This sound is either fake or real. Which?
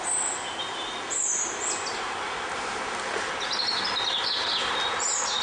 real